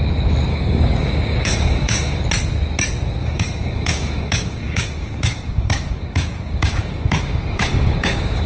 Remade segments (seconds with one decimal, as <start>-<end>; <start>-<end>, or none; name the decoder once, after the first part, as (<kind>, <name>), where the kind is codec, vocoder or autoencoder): 0.5-2.2 (codec, DAC); 3.2-8.5